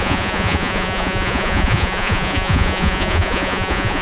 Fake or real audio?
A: fake